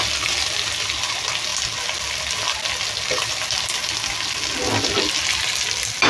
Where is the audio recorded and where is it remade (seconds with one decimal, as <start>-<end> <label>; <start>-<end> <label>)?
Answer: 0.0-6.1 recorded